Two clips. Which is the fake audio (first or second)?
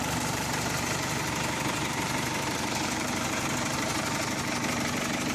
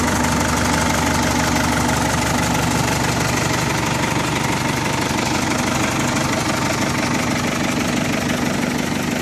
first